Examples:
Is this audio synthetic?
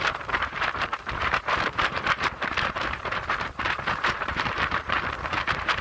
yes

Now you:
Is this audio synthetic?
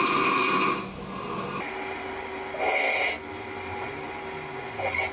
no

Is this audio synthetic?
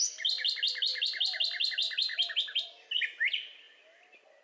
no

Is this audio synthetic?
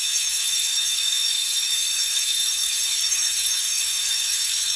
yes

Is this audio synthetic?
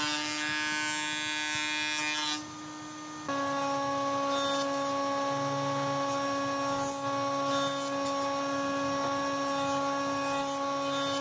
no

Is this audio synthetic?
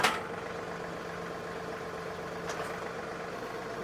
no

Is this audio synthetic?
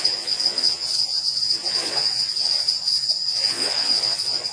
yes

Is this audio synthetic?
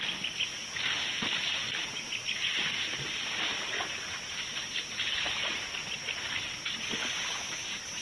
no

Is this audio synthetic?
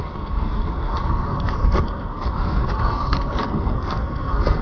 yes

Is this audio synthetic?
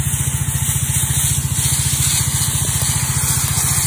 no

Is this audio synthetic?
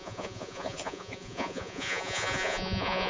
yes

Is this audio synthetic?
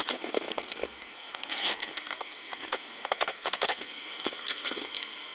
yes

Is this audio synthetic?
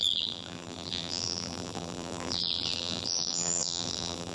yes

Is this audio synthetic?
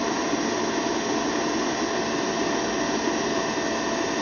no